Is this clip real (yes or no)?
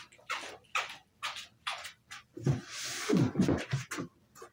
yes